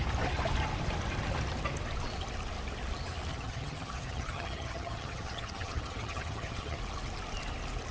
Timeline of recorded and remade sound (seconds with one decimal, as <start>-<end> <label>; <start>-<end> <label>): 0.0-3.3 recorded; 3.3-6.8 remade; 6.8-7.9 recorded

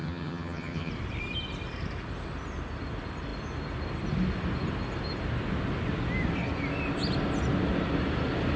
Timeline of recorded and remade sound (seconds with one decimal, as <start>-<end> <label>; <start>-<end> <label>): 0.0-0.9 remade; 0.9-8.6 recorded

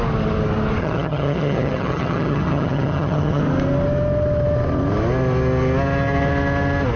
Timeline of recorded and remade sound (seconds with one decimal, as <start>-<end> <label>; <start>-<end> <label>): 0.0-0.8 recorded; 0.8-3.4 remade; 3.4-7.0 recorded